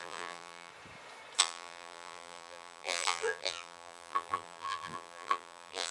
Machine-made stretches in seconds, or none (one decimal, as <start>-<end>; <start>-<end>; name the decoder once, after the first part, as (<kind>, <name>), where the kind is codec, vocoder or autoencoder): 0.0-0.7 (vocoder, BigVGAN v2); 1.4-5.9